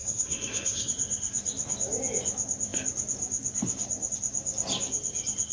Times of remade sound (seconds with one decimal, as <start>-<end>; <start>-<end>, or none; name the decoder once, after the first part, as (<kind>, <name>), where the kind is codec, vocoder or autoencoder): 0.0-0.9 (codec, SNAC)